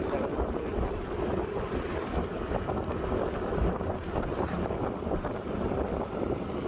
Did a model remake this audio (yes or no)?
yes